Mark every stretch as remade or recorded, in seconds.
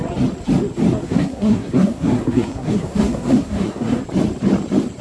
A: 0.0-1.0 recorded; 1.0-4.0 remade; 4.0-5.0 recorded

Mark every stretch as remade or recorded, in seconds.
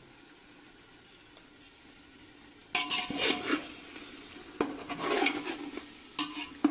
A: 0.0-6.7 recorded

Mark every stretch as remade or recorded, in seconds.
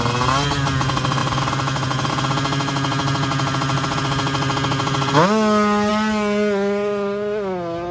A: 0.0-7.9 recorded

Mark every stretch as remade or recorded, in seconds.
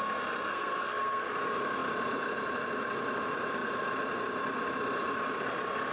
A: 0.0-0.5 recorded; 0.5-1.3 remade; 1.3-5.9 recorded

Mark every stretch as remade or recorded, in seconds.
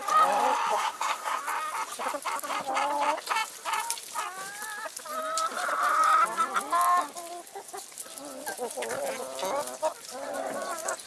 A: 0.0-0.7 recorded; 0.7-1.4 remade; 1.4-11.1 recorded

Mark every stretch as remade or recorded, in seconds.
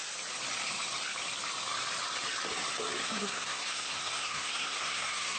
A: 0.0-3.0 recorded; 3.0-5.4 remade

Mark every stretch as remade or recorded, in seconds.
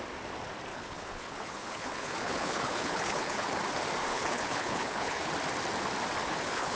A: 0.0-0.7 recorded; 0.7-3.6 remade; 3.6-4.1 recorded; 4.1-5.3 remade; 5.3-6.2 recorded; 6.2-6.8 remade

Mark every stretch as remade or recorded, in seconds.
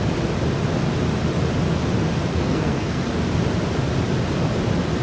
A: 0.0-2.3 recorded; 2.3-3.1 remade; 3.1-5.0 recorded